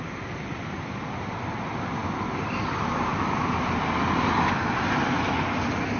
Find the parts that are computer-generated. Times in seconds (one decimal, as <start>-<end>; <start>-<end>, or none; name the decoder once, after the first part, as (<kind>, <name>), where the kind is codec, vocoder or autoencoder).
none